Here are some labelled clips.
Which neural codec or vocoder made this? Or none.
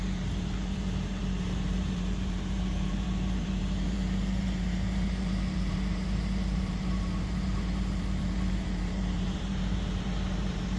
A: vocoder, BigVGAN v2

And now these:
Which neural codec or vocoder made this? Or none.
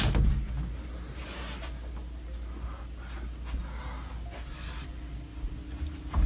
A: none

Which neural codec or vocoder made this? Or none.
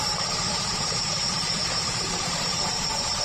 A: vocoder, BigVGAN v2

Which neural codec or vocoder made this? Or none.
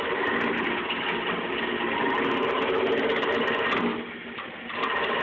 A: none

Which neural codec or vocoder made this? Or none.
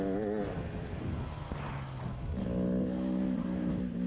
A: none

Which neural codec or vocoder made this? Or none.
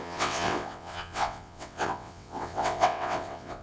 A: vocoder, WaveNeXt